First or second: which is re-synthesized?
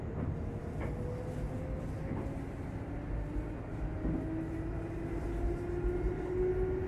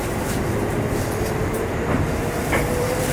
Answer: second